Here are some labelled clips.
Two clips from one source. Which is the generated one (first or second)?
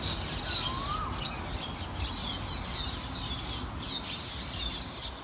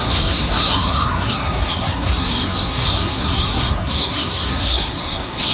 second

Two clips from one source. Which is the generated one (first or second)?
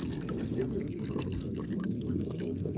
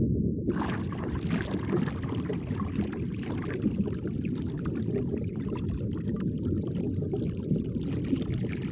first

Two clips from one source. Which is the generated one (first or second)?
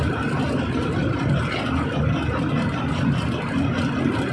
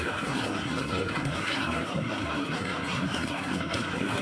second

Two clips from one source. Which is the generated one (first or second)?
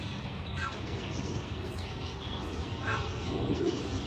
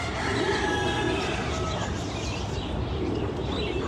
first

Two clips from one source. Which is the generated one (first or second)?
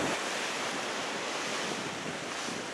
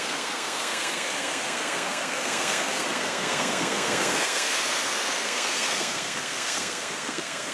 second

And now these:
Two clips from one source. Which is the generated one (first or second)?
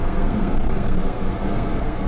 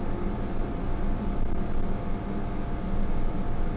first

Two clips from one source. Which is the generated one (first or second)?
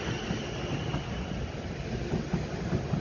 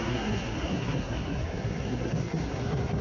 second